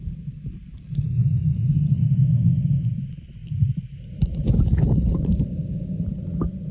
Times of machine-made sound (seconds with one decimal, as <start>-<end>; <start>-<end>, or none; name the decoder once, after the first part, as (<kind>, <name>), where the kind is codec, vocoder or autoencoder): none